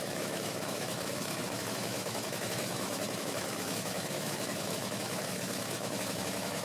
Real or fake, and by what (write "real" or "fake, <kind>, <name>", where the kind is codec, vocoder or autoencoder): fake, autoencoder, DAC-VAE